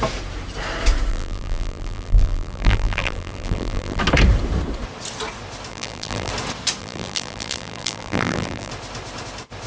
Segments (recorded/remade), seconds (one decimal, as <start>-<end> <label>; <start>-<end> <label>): 0.0-1.1 recorded; 1.1-4.0 remade; 4.0-5.7 recorded; 5.7-6.3 remade; 6.3-6.8 recorded; 6.8-8.7 remade; 8.7-9.7 recorded